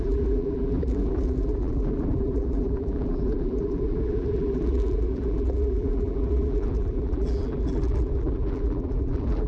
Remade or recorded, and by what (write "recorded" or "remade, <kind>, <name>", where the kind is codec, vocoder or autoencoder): remade, vocoder, BigVGAN v2